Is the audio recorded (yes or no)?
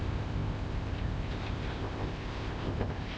no